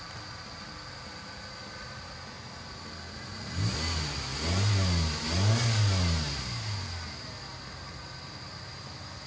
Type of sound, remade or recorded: recorded